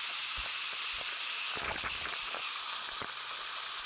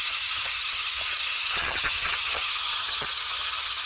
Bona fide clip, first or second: first